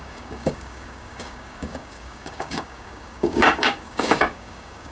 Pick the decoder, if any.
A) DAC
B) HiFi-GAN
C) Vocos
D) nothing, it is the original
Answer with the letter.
A